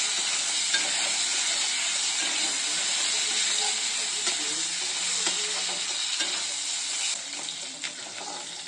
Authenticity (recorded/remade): recorded